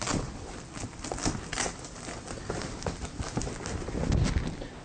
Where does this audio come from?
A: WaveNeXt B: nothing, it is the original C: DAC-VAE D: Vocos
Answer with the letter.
B